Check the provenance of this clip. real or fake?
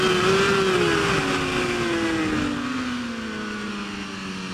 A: real